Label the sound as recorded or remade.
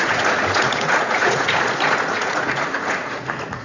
remade